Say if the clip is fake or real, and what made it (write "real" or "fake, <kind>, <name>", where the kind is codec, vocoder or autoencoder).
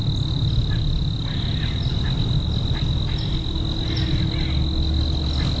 real